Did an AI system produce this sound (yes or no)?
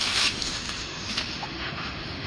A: yes